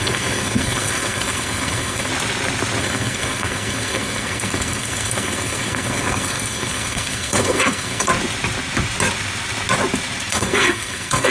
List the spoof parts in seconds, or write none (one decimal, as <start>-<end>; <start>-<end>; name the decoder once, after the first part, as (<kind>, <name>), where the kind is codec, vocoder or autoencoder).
0.0-2.1 (codec, SNAC); 2.8-8.1; 10.3-11.3